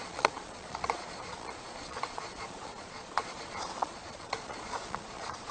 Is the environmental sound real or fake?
fake